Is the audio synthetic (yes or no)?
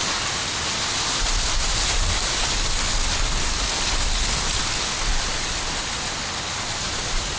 no